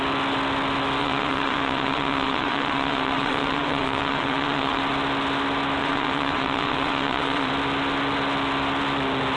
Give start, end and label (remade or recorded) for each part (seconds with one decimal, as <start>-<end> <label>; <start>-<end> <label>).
0.0-1.0 recorded; 1.0-4.8 remade; 4.8-5.8 recorded; 5.8-7.5 remade; 7.5-9.4 recorded